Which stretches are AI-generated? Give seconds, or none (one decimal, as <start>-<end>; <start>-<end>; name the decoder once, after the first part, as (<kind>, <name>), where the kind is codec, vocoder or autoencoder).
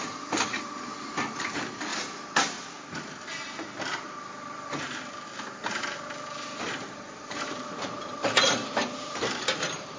0.0-1.9 (vocoder, BigVGAN v2); 2.9-10.0